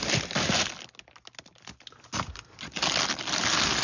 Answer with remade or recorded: recorded